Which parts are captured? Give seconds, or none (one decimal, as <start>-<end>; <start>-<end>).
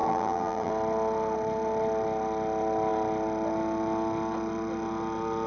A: 0.7-5.5